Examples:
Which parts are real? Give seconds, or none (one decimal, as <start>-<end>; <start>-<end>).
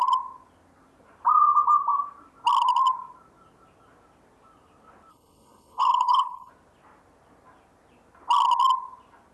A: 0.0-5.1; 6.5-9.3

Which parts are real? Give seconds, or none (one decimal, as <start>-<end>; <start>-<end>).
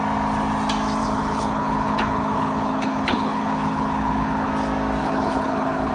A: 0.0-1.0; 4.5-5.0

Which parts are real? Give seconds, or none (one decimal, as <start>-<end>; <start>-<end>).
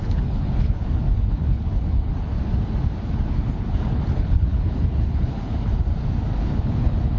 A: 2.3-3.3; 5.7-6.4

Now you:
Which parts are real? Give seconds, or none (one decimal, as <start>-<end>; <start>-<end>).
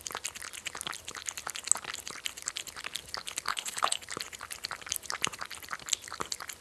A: 0.0-3.5; 4.0-6.6